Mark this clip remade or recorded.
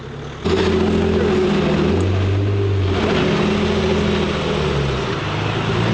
recorded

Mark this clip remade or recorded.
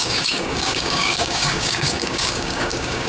remade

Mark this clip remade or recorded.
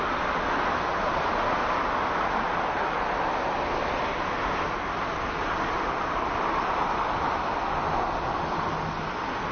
recorded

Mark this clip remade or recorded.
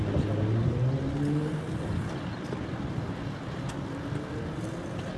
recorded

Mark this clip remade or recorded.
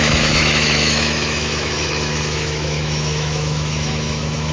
remade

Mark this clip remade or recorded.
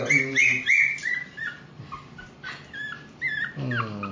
recorded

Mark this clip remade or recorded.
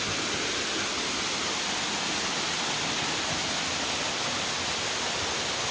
recorded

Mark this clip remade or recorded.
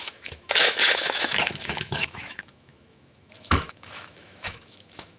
remade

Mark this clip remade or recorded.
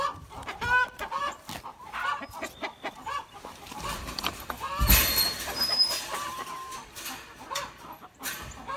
remade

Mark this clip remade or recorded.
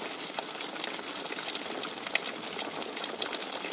recorded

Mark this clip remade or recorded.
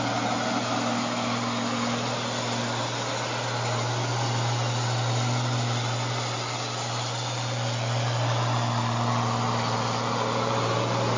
recorded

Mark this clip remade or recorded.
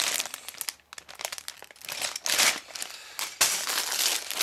recorded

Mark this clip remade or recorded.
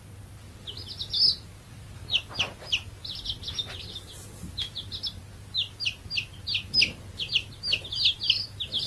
recorded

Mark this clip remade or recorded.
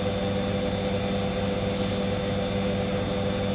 recorded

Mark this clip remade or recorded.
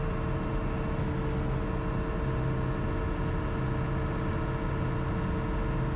recorded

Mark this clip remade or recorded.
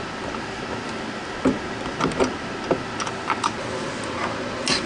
recorded